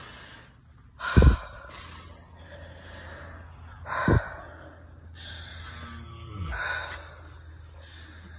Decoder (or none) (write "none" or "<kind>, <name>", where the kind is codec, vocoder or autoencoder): none